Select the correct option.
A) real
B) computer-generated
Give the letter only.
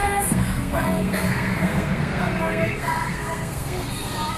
B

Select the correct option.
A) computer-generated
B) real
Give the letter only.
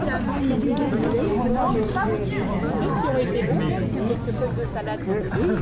B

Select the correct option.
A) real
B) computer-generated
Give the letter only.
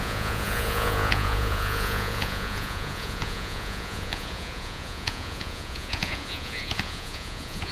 B